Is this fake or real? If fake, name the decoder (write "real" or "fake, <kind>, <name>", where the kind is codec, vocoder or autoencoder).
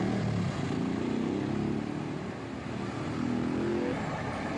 real